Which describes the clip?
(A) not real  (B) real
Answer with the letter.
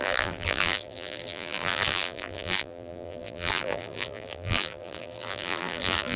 A